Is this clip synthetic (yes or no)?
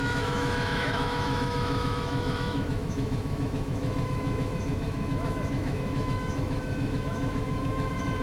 yes